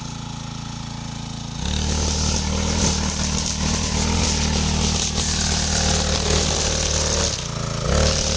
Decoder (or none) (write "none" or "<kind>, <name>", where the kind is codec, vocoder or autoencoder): none